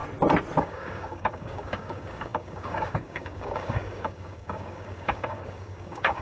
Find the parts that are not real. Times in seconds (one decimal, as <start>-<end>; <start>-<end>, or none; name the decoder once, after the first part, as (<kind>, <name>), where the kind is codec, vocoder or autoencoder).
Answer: 0.6-6.2 (codec, DAC)